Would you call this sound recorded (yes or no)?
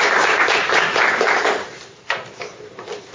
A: no